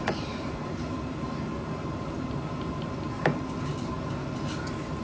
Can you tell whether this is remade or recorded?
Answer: recorded